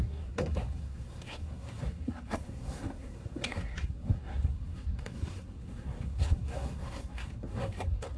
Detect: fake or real fake